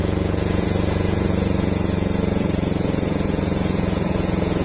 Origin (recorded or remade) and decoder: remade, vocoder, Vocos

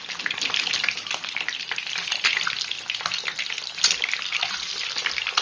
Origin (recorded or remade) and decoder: recorded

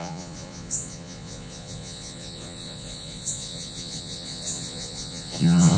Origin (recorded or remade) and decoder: remade, vocoder, Vocos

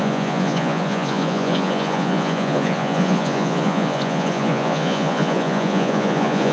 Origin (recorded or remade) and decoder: remade, vocoder, Vocos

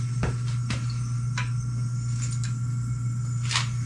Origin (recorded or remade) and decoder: recorded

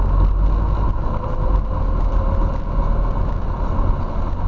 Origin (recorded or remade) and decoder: recorded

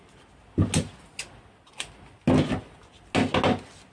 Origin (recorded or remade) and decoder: recorded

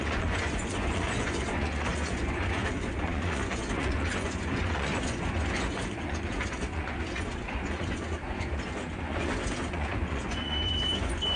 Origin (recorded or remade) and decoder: remade, vocoder, Vocos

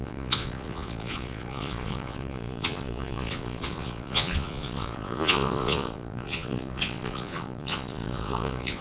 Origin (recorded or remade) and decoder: remade, vocoder, Vocos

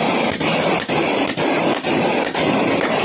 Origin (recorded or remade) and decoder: recorded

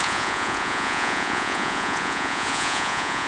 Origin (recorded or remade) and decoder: remade, vocoder, Vocos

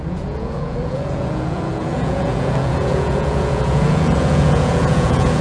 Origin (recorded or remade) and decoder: remade, vocoder, Vocos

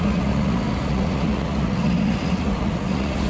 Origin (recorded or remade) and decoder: remade, vocoder, Vocos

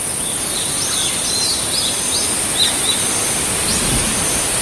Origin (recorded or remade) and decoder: recorded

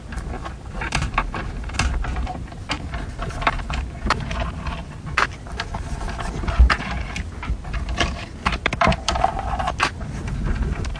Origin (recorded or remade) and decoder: recorded